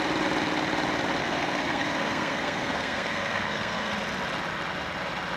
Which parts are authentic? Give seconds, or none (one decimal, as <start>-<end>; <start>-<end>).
0.0-1.2; 3.9-5.4